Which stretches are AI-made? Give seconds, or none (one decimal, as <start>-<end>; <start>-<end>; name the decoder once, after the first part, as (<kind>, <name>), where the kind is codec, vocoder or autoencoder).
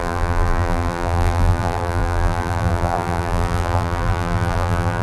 0.0-5.0 (vocoder, BigVGAN v2)